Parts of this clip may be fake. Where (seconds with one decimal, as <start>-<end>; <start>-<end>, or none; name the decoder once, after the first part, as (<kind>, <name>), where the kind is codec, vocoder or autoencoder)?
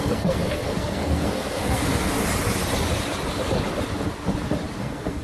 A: 0.0-2.2 (codec, SNAC); 4.8-5.2